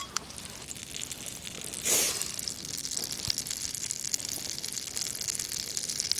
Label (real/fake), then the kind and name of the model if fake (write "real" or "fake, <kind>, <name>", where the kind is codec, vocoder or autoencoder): real